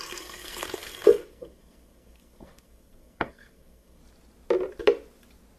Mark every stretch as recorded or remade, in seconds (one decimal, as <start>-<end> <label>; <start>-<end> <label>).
0.0-4.0 remade; 4.0-5.6 recorded